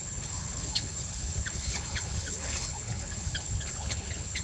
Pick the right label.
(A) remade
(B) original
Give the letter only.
A